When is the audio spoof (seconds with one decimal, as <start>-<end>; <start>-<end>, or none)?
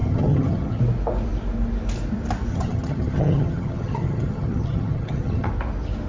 0.0-0.8; 2.5-5.5